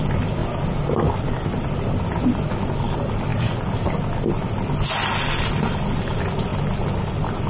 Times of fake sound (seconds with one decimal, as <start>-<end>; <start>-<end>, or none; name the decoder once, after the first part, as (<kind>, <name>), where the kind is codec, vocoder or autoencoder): none